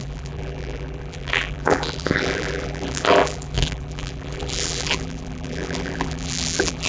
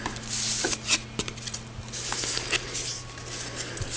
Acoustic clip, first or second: second